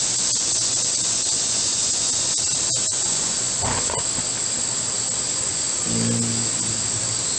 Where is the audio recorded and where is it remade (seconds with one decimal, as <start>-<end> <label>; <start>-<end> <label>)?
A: 0.0-2.4 remade; 2.4-2.9 recorded; 2.9-4.0 remade; 4.0-5.3 recorded; 5.3-5.8 remade; 5.8-7.4 recorded

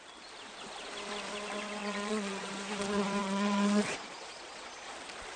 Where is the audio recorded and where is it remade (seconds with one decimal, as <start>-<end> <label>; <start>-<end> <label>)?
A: 0.0-1.8 recorded; 1.8-2.5 remade; 2.5-3.2 recorded; 3.2-4.9 remade; 4.9-5.4 recorded